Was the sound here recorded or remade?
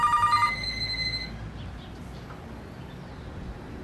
recorded